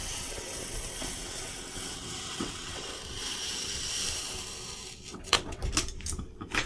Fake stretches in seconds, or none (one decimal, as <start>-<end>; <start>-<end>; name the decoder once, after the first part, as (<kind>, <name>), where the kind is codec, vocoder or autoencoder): 0.0-2.9 (vocoder, WaveNeXt); 5.1-5.6